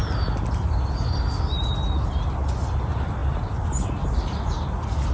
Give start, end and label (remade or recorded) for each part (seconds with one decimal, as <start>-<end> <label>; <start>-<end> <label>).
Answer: 0.0-5.1 recorded